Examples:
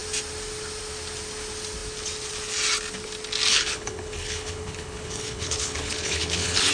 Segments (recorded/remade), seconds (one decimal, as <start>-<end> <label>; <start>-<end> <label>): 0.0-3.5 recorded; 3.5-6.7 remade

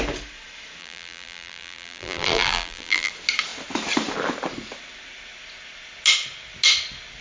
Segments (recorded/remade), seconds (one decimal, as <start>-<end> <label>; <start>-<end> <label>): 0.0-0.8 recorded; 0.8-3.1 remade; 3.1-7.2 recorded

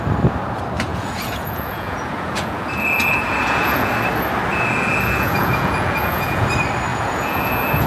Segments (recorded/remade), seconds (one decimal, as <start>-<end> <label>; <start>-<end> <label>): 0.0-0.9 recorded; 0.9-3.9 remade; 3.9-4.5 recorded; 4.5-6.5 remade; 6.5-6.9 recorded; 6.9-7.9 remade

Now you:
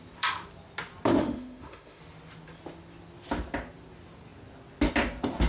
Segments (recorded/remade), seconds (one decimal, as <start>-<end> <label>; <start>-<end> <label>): 0.0-1.2 recorded; 1.2-2.0 remade; 2.0-5.5 recorded